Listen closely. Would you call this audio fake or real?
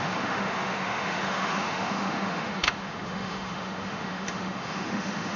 fake